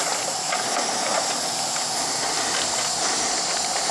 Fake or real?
real